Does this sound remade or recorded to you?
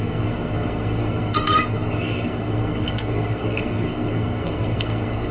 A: remade